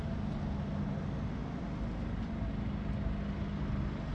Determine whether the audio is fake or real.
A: real